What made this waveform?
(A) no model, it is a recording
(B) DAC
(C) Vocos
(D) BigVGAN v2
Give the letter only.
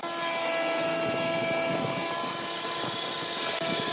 A